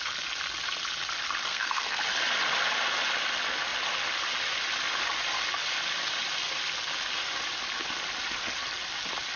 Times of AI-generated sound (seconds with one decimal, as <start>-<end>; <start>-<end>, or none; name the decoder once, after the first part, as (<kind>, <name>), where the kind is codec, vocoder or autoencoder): 1.5-2.0 (codec, SNAC)